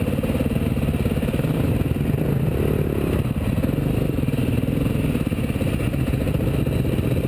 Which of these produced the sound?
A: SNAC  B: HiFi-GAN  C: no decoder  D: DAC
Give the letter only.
C